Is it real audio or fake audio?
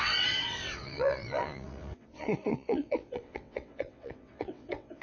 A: fake